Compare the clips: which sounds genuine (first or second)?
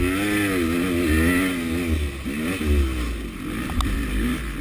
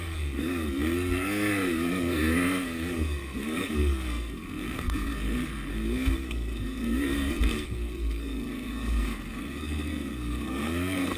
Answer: first